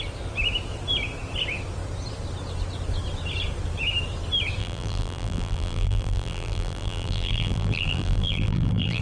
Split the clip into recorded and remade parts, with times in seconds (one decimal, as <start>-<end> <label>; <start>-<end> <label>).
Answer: 0.0-4.6 recorded; 4.6-9.0 remade